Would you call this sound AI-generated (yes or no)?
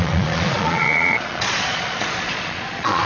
yes